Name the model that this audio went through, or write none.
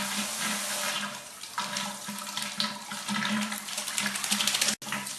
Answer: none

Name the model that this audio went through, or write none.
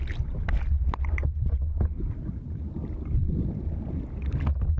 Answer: none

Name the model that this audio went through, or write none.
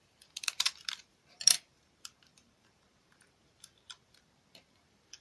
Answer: vocoder, BigVGAN v2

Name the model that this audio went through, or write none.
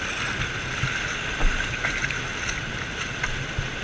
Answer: none